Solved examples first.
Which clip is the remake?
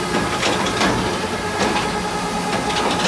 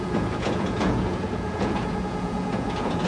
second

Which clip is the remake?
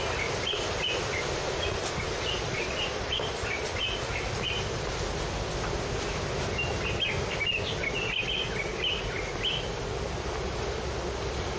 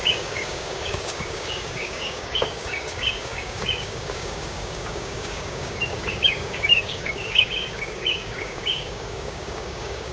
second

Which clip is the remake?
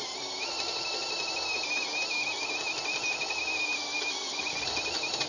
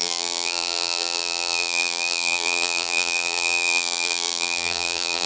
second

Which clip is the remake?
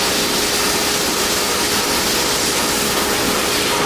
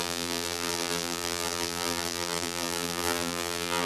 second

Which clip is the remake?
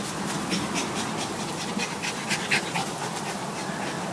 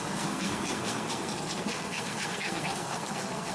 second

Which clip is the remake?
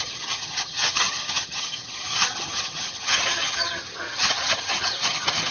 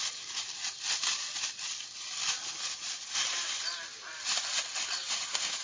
first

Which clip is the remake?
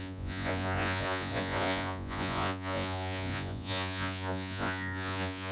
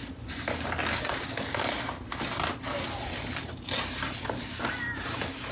first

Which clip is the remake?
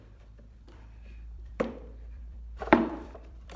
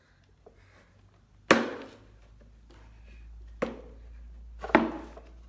first